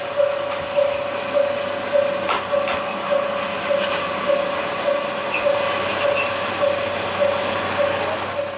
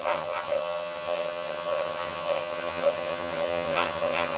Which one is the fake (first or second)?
second